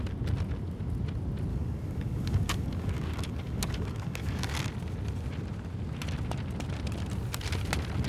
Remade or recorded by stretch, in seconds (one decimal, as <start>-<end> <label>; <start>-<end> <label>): 0.0-1.5 recorded; 1.5-4.7 remade; 4.7-8.1 recorded